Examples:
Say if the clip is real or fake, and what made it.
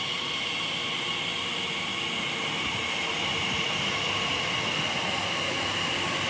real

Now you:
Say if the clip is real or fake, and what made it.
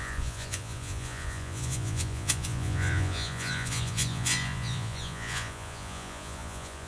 fake, vocoder, Vocos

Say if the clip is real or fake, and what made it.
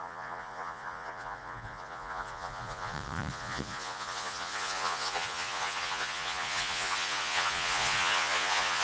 fake, vocoder, Vocos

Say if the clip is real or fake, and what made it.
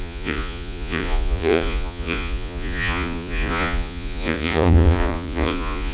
fake, vocoder, Vocos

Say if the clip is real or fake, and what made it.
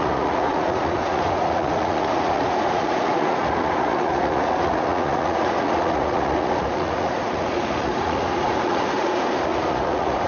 fake, vocoder, Vocos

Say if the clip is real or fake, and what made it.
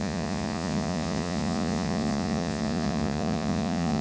fake, vocoder, Vocos